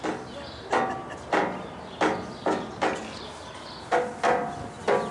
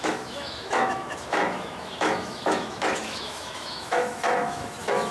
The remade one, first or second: second